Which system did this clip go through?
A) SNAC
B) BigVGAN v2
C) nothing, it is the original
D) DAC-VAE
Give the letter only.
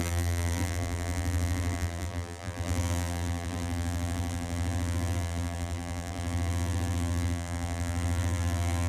B